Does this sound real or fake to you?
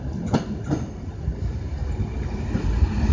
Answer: real